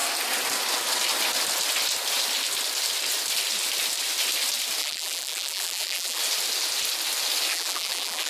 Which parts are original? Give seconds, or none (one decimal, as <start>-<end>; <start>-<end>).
0.0-4.8; 6.2-7.5